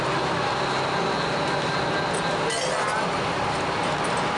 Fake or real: real